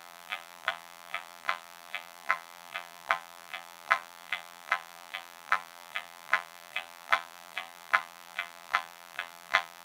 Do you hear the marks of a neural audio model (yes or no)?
yes